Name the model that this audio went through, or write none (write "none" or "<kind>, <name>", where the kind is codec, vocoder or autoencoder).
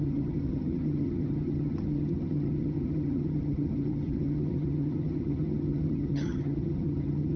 vocoder, HiFi-GAN